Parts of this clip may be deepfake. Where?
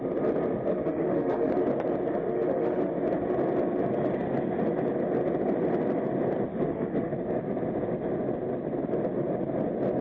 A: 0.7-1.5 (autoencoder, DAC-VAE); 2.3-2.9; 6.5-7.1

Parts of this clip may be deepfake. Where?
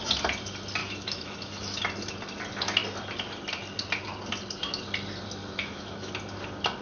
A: 0.8-1.8 (autoencoder, DAC-VAE); 5.4-6.1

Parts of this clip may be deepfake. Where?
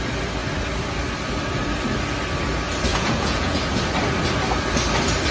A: 2.9-3.6 (vocoder, Vocos)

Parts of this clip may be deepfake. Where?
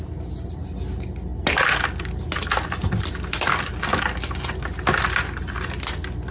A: none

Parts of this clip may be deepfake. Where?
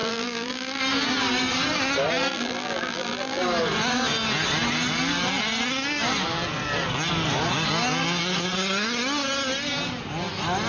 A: 0.0-0.8 (vocoder, BigVGAN v2); 2.3-3.4